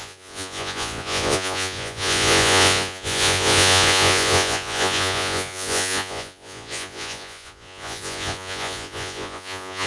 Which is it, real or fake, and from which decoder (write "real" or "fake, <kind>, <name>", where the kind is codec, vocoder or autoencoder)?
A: fake, vocoder, Vocos